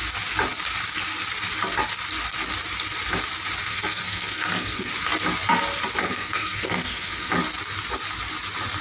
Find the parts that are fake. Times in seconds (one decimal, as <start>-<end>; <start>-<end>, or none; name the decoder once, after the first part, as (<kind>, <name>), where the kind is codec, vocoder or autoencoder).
3.7-4.9 (codec, SNAC); 6.0-7.3